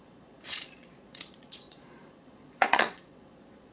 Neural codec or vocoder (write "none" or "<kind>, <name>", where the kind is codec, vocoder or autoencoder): vocoder, Vocos